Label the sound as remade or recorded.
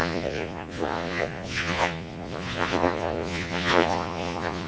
remade